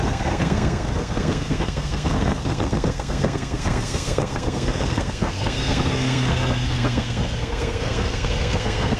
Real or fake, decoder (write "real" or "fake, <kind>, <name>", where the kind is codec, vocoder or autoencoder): fake, codec, SNAC